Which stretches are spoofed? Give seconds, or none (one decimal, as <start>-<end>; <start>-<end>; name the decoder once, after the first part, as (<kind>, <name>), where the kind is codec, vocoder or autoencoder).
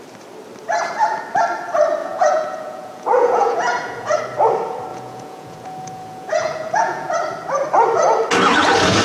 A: 2.0-4.2 (vocoder, Vocos); 4.9-7.1